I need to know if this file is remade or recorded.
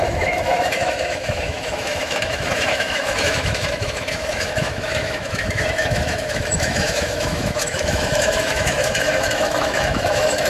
remade